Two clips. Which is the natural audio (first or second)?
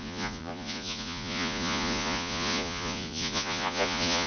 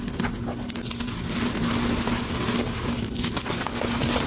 second